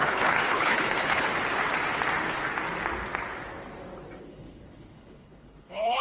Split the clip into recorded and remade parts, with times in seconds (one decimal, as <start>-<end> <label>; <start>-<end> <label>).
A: 0.0-1.3 remade; 1.3-4.2 recorded; 4.2-6.0 remade